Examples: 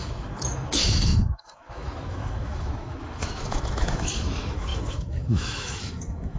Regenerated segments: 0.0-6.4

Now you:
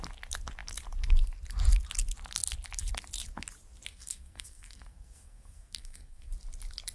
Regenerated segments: 3.9-6.3

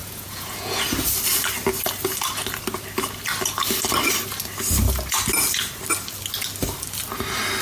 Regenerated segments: 0.0-0.8

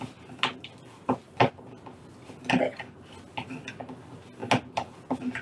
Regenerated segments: none

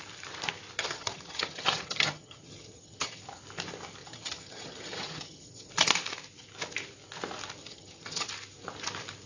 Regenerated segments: 0.8-3.2; 4.0-5.7; 7.6-8.3

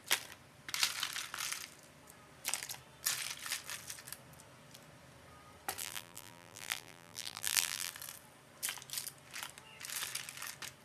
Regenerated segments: 5.8-7.9

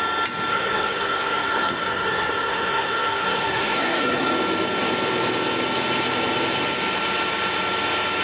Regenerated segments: 0.5-4.3